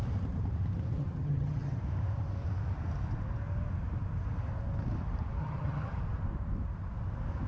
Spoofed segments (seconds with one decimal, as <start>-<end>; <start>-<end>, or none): 0.9-1.8; 5.4-6.0